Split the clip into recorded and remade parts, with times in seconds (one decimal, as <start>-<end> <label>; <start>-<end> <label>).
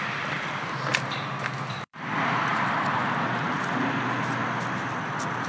0.0-2.5 remade; 2.5-4.0 recorded; 4.0-5.5 remade